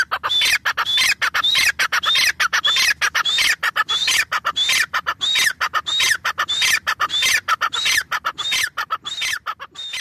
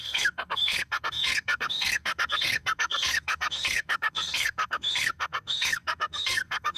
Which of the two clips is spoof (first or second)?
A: second